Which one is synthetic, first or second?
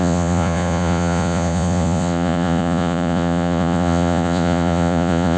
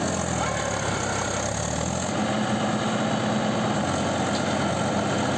first